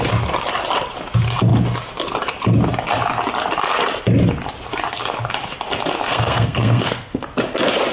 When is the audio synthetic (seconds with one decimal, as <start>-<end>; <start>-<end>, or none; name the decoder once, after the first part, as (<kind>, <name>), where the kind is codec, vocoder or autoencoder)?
6.1-7.2 (codec, SNAC)